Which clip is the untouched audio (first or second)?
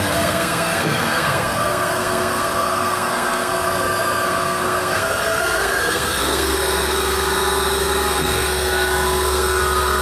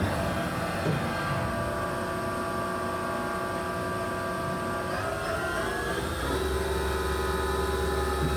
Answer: second